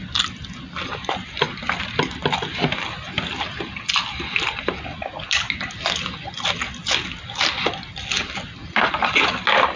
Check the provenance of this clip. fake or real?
real